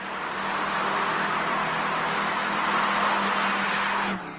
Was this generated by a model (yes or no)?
no